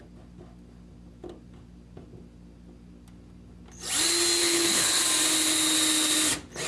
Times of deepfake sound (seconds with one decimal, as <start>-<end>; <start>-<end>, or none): 4.4-5.0